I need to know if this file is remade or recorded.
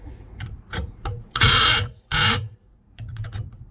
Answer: remade